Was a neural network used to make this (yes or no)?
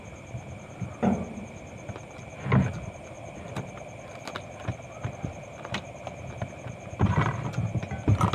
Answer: no